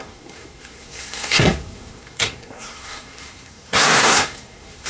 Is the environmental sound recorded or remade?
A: remade